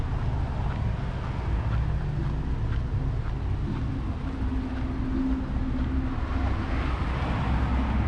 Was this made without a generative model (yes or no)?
yes